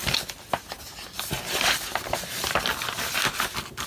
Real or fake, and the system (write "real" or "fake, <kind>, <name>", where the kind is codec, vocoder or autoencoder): real